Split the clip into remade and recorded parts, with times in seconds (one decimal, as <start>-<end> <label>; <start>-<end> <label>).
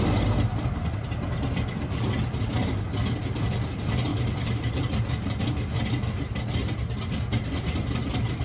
0.0-4.1 recorded; 4.1-5.6 remade; 5.6-8.4 recorded